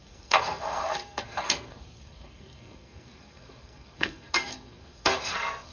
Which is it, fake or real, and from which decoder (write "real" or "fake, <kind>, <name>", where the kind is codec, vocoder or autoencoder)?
fake, codec, SNAC